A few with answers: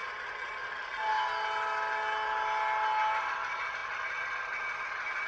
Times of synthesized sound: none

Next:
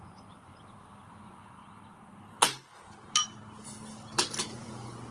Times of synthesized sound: 0.0-0.5 (vocoder, Vocos); 1.1-1.6; 4.5-5.1

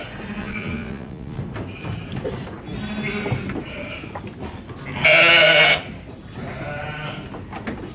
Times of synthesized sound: 0.4-1.4 (vocoder, Vocos)